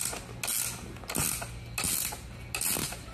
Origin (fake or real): real